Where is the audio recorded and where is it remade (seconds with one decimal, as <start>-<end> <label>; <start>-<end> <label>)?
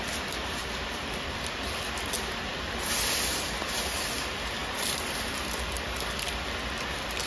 0.0-0.6 recorded; 0.6-3.7 remade; 3.7-4.6 recorded; 4.6-5.2 remade; 5.2-7.3 recorded